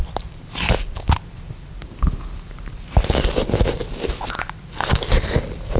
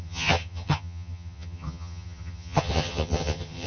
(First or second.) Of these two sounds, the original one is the first